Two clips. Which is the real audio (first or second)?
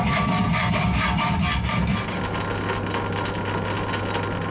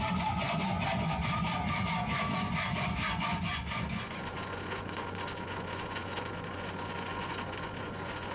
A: first